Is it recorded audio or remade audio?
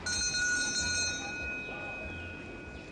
recorded